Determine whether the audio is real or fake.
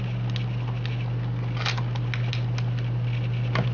real